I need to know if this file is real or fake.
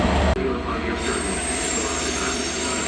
real